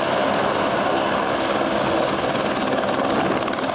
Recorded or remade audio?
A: recorded